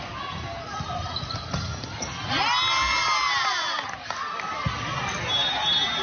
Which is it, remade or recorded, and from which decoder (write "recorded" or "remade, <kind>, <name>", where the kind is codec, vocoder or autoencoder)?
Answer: recorded